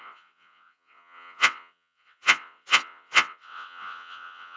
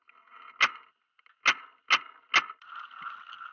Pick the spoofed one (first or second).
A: first